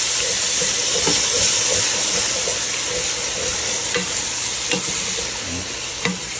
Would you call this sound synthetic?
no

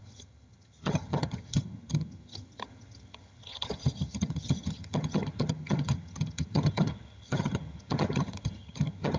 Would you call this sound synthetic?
yes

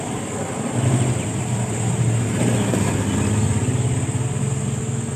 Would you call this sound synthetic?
no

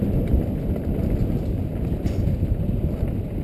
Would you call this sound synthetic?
no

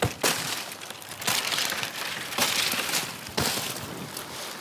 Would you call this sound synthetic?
no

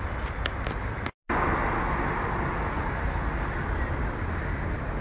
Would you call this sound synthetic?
no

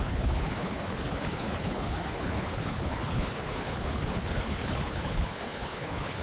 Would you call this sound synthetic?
yes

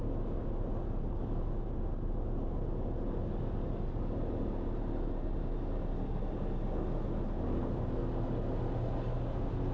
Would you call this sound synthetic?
no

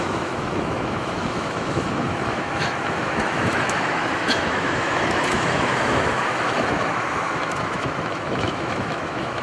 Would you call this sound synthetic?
yes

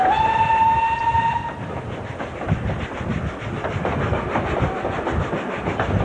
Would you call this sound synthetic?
no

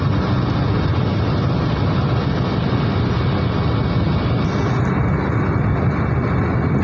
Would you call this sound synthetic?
no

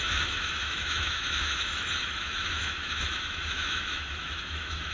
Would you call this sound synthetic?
yes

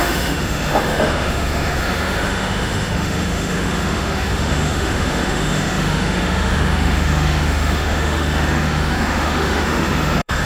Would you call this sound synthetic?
yes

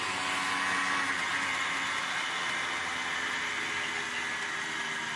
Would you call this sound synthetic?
no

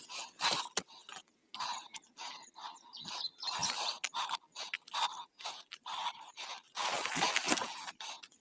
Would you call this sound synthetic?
no